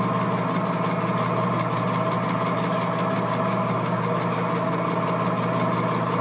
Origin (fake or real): real